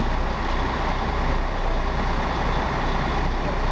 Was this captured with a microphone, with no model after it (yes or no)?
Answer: yes